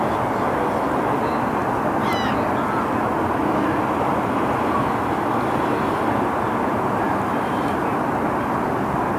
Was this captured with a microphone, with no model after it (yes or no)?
yes